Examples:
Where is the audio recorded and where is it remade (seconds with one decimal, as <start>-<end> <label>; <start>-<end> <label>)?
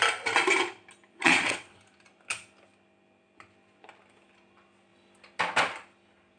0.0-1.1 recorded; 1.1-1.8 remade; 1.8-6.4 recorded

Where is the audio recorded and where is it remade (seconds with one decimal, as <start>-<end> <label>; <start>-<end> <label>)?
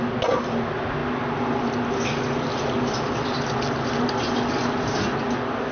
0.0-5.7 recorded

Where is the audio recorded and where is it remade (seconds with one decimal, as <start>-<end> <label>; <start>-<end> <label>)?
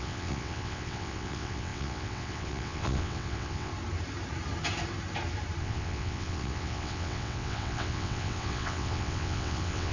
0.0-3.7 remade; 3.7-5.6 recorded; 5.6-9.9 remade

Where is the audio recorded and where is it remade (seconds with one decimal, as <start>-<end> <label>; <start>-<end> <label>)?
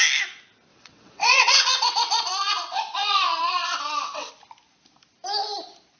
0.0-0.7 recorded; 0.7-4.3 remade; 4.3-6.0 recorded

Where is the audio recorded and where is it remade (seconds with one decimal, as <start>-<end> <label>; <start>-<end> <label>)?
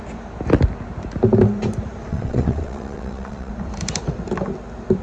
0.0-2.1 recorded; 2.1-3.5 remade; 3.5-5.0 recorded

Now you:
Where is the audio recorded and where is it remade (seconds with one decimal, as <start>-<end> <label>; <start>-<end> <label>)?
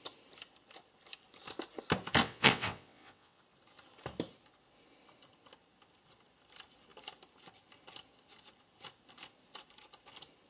0.0-2.2 recorded; 2.2-3.4 remade; 3.4-10.5 recorded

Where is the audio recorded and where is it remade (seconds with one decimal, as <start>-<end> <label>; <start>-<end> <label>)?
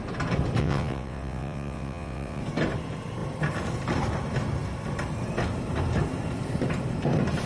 0.0-0.6 recorded; 0.6-2.4 remade; 2.4-7.5 recorded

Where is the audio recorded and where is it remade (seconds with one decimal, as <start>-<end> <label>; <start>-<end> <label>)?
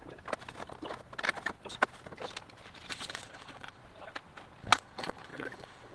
0.0-2.9 recorded; 2.9-3.8 remade; 3.8-4.6 recorded; 4.6-5.9 remade